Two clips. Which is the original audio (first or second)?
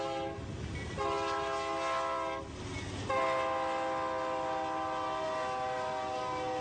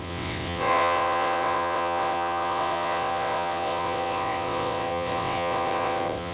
first